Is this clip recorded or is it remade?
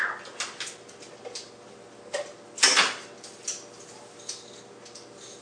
recorded